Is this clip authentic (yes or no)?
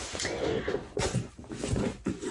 no